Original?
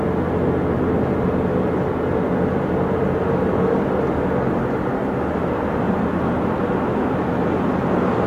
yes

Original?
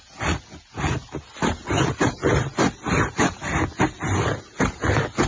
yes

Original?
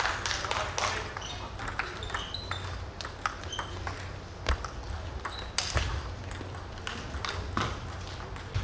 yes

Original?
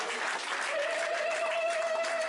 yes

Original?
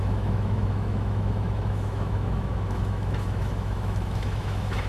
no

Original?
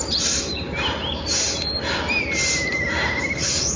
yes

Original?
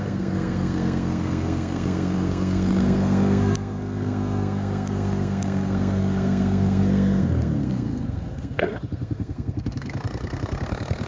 no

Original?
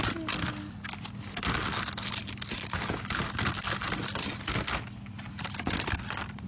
yes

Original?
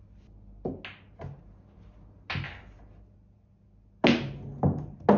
yes